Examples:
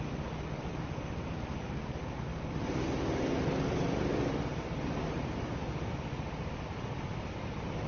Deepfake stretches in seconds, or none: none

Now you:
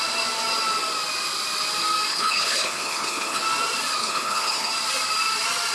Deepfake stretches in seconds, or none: 2.1-3.4 (codec, HILCodec); 4.0-4.7

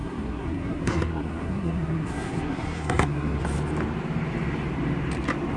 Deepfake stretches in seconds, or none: 0.0-3.4 (codec, SNAC)

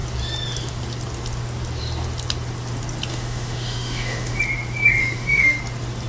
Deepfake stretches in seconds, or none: 3.1-4.4 (autoencoder, DAC-VAE); 5.0-5.6